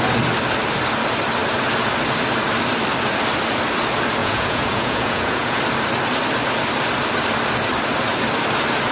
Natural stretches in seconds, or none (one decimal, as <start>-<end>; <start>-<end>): 0.0-4.2; 5.6-8.9